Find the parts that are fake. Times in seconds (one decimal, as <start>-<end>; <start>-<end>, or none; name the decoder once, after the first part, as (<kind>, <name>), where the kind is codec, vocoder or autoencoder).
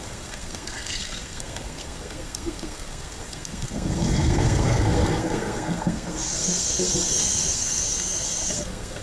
0.0-9.0 (codec, SNAC)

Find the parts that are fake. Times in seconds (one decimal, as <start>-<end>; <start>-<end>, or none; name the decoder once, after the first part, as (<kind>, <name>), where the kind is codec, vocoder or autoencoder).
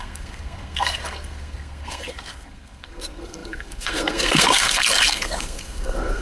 0.0-6.2 (codec, SNAC)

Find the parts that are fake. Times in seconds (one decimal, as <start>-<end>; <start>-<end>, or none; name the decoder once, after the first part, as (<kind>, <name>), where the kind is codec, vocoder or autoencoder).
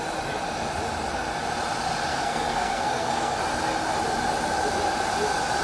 2.1-3.4 (codec, SNAC)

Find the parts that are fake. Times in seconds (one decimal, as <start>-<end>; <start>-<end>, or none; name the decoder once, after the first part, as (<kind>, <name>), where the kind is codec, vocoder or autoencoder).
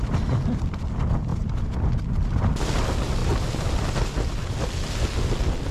none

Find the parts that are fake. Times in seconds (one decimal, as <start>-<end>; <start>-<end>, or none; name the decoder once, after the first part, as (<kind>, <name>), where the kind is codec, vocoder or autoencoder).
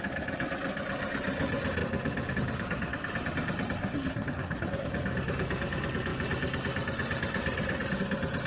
3.8-4.9 (codec, SNAC)